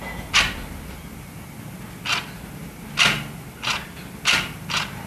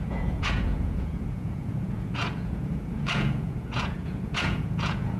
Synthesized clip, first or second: second